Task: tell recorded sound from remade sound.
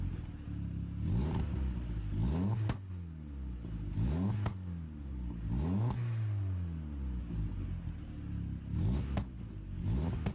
recorded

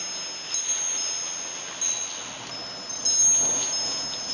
recorded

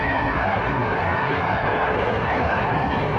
remade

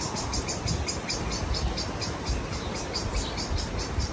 recorded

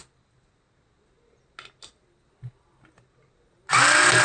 recorded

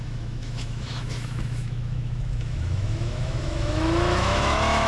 remade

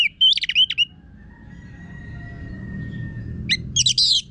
recorded